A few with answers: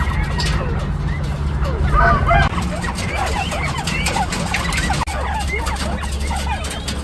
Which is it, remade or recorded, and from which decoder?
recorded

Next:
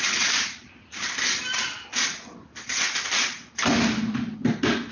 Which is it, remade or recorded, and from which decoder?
recorded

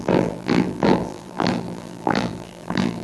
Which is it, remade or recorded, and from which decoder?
remade, vocoder, BigVGAN v2